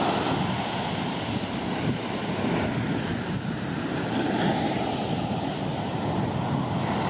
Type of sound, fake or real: real